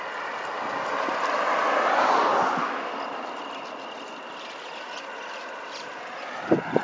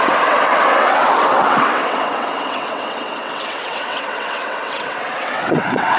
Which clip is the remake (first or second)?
second